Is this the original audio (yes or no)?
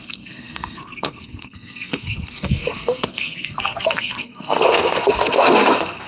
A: no